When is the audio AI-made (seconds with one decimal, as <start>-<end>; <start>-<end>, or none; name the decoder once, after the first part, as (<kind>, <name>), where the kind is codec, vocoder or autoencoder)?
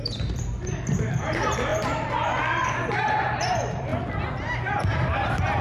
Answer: 0.0-5.6 (vocoder, BigVGAN v2)